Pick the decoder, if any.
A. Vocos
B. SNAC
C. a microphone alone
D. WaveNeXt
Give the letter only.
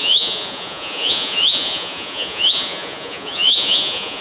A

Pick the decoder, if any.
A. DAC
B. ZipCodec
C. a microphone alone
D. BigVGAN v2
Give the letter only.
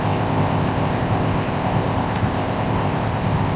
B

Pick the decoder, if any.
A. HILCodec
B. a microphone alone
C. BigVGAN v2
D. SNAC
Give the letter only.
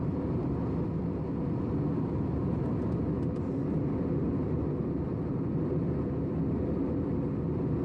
B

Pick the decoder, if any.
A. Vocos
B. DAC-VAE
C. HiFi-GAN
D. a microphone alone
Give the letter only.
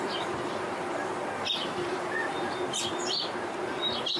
D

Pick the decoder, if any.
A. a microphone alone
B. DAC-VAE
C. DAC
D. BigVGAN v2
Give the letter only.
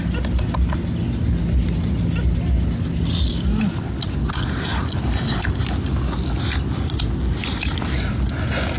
A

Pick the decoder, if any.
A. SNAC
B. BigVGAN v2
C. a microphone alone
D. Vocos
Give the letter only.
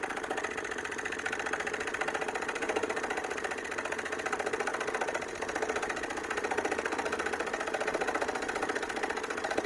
B